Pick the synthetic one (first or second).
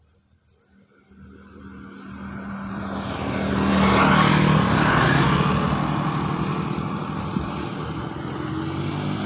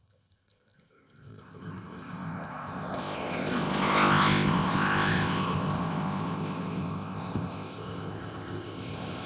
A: second